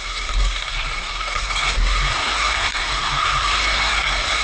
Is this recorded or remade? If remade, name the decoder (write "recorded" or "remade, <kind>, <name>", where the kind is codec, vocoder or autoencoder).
remade, codec, SNAC